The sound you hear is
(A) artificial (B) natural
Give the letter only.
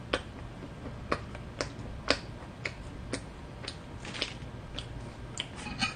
B